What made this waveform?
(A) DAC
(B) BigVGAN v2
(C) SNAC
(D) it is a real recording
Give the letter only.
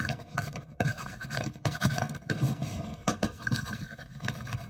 C